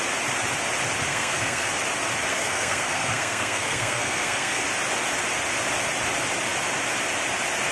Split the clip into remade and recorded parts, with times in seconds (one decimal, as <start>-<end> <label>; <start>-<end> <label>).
0.0-1.1 recorded; 1.1-1.7 remade; 1.7-2.3 recorded; 2.3-4.6 remade; 4.6-7.7 recorded